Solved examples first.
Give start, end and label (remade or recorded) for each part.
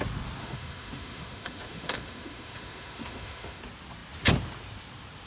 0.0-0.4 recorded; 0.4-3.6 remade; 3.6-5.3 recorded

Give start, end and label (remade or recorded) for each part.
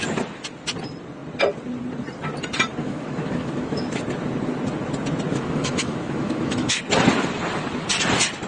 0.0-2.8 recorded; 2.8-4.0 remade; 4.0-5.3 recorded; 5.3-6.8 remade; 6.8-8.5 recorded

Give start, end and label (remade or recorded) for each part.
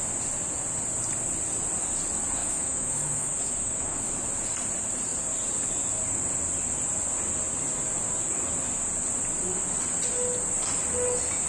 0.0-2.4 recorded; 2.4-4.1 remade; 4.1-11.5 recorded